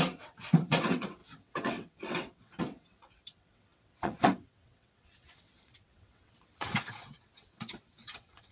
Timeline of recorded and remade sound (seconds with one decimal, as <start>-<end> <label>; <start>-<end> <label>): 0.0-8.5 remade